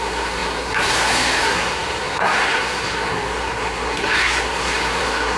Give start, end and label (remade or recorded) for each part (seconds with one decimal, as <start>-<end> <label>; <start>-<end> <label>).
0.0-5.4 remade